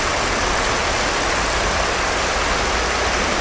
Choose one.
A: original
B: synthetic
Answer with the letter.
A